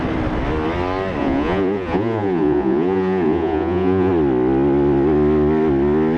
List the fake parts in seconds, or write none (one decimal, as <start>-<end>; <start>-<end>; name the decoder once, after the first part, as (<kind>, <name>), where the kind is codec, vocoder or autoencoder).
1.2-4.1 (vocoder, Vocos)